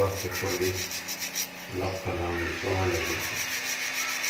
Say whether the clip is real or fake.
real